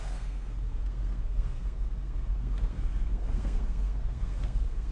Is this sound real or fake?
fake